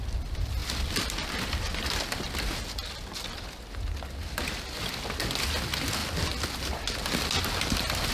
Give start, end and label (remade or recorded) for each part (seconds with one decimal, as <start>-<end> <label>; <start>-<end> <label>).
0.0-8.1 recorded